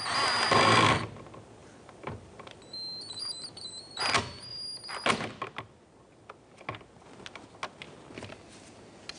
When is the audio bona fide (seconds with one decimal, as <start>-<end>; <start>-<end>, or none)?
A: 0.0-1.6; 4.1-4.5; 5.1-9.2